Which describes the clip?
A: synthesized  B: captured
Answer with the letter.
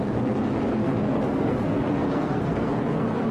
A